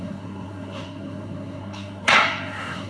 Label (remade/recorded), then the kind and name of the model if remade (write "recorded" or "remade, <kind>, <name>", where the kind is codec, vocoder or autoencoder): remade, codec, SNAC